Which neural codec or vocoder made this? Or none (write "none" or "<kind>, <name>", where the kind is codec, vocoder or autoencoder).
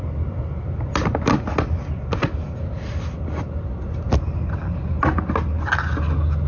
none